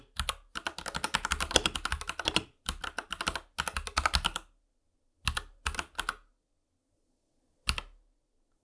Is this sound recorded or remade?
recorded